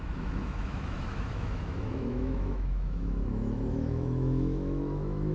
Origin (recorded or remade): remade